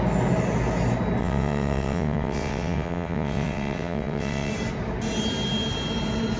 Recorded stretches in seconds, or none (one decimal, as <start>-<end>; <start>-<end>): 0.0-1.2; 4.5-6.4